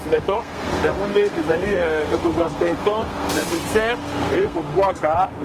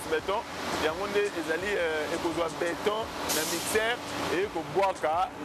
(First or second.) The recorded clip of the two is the second